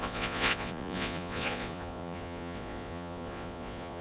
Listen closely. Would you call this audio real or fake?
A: fake